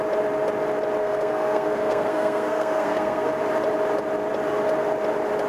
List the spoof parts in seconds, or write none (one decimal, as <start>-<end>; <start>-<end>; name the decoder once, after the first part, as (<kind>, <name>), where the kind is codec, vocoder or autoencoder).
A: 1.0-3.3 (codec, SNAC)